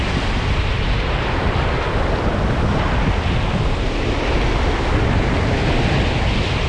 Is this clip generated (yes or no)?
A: no